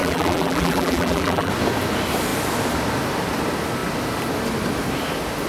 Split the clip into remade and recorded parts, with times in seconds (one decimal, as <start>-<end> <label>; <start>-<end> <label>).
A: 0.0-1.5 remade; 1.5-5.5 recorded